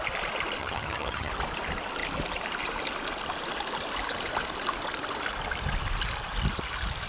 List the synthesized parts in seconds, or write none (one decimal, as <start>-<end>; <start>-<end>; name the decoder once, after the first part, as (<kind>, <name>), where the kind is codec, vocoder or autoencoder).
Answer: 0.6-1.3 (vocoder, HiFi-GAN)